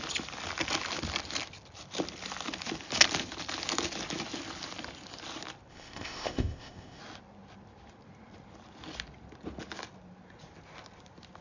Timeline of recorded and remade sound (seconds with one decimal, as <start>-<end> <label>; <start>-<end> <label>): 0.0-5.7 recorded; 5.7-7.0 remade; 7.0-11.4 recorded